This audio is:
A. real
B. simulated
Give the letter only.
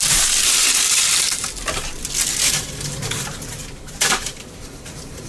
B